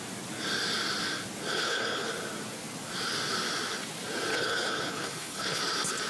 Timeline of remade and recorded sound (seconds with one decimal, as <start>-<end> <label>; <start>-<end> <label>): 0.0-1.5 recorded; 1.5-2.1 remade; 2.1-4.3 recorded; 4.3-5.6 remade; 5.6-6.1 recorded

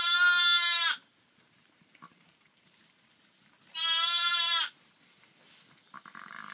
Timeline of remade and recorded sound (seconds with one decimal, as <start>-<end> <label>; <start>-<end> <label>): 0.0-0.8 recorded; 0.8-4.7 remade; 4.7-6.5 recorded

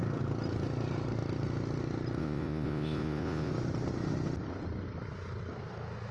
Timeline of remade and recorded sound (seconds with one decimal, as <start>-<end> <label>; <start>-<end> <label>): 0.0-2.2 recorded; 2.2-3.5 remade; 3.5-6.1 recorded

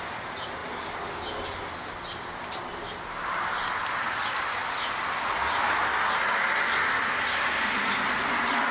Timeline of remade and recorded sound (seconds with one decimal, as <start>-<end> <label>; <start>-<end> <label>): 0.0-8.7 recorded

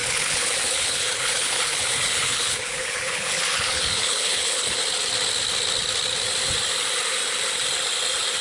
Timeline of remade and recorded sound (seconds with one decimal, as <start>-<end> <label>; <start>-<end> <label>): 0.0-4.8 remade; 4.8-8.4 recorded

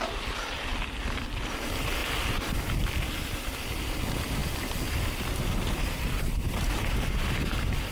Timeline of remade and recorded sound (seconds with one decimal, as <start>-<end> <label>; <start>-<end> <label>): 0.0-0.7 remade; 0.7-1.5 recorded; 1.5-7.9 remade

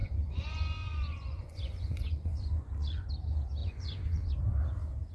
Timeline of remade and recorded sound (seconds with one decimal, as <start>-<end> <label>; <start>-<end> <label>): 0.0-3.1 remade; 3.1-3.6 recorded; 3.6-4.3 remade; 4.3-5.1 recorded

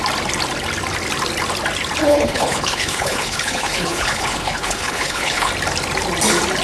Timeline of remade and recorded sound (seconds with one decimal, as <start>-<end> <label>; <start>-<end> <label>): 0.0-2.0 recorded; 2.0-5.5 remade; 5.5-6.6 recorded